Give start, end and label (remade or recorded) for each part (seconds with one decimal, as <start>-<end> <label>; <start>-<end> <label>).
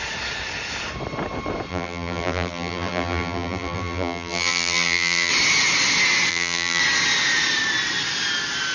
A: 0.0-1.7 recorded; 1.7-5.3 remade; 5.3-6.3 recorded; 6.3-6.8 remade; 6.8-8.7 recorded